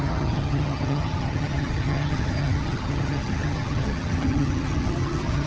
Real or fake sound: fake